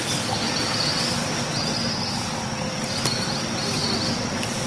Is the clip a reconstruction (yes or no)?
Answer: no